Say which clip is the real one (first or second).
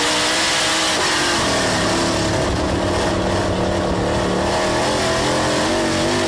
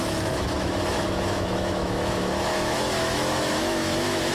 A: first